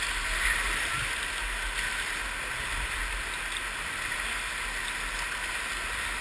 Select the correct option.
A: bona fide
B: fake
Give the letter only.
A